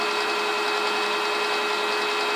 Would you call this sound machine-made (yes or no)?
no